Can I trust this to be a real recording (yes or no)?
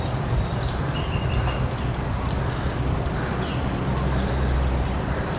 no